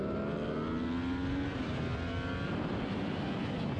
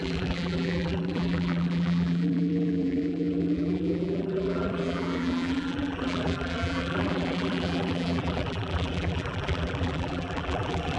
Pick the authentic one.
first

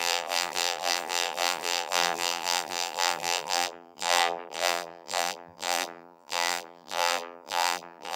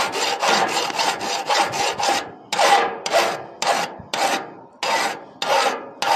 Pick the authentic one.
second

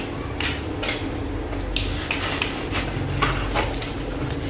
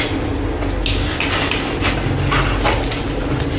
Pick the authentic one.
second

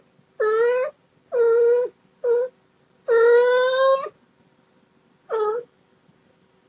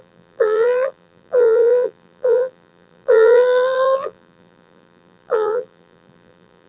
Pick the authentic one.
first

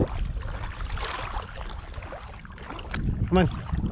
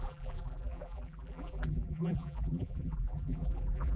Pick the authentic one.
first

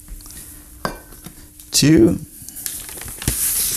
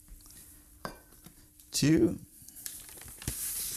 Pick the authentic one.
first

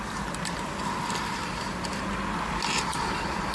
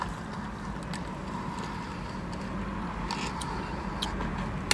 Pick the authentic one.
second